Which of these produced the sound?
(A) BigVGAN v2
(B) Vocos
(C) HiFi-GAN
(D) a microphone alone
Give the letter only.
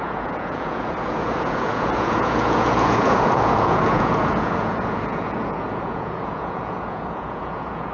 B